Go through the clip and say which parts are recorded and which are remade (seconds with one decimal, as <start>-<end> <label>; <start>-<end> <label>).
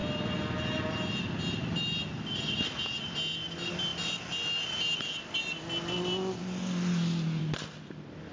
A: 0.0-8.3 recorded